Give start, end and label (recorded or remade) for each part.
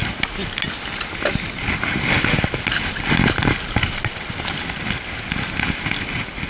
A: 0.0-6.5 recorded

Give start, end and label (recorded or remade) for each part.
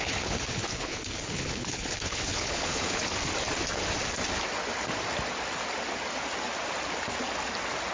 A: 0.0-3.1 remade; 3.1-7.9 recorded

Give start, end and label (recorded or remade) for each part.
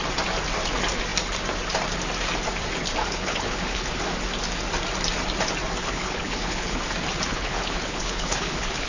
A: 0.0-3.0 recorded; 3.0-3.9 remade; 3.9-5.8 recorded; 5.8-6.8 remade; 6.8-7.3 recorded; 7.3-8.9 remade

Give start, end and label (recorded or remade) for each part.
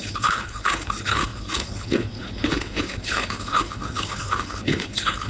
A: 0.0-5.3 remade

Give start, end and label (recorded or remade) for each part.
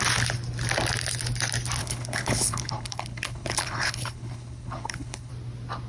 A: 0.0-1.8 recorded; 1.8-5.3 remade; 5.3-5.9 recorded